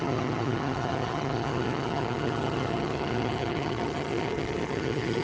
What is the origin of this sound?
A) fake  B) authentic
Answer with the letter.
A